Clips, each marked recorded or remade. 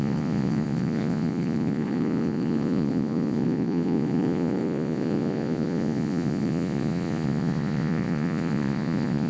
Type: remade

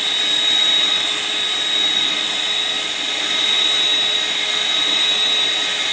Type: recorded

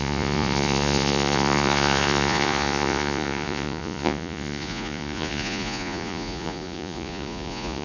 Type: remade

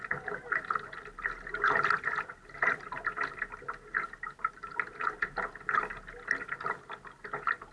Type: recorded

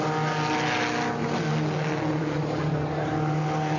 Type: recorded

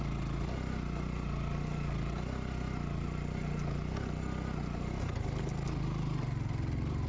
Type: recorded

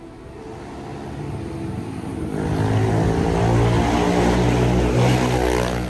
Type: recorded